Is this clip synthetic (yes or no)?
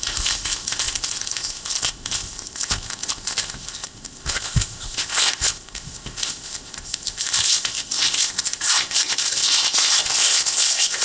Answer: yes